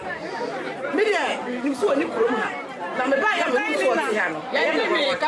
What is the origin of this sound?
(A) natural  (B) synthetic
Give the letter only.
B